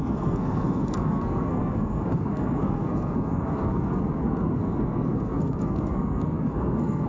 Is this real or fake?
fake